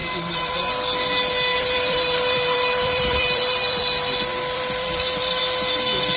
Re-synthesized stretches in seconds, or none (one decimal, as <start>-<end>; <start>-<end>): 0.0-0.5; 1.5-3.8; 4.3-5.4

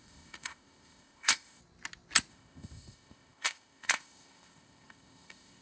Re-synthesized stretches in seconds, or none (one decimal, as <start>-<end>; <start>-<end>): 0.0-1.6; 2.3-5.6

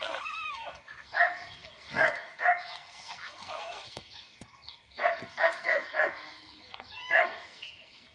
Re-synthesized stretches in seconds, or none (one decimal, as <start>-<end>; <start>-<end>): 0.0-8.1

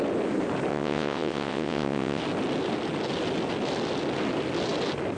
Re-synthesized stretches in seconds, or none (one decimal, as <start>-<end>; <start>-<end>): 0.7-2.2

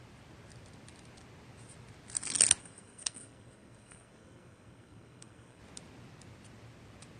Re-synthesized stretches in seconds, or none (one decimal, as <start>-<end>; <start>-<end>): 2.6-5.6